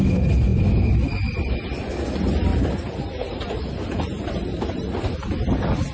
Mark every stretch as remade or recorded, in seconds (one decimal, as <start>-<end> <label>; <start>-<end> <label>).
0.0-2.5 recorded; 2.5-5.3 remade; 5.3-5.9 recorded